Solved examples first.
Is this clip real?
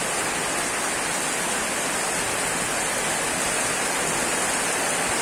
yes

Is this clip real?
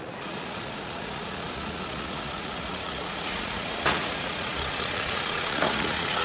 no